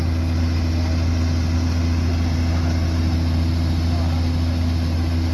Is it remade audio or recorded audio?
recorded